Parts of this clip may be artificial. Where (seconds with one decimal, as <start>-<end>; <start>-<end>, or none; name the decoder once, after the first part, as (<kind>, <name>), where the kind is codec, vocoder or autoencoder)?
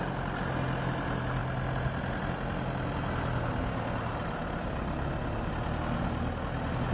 none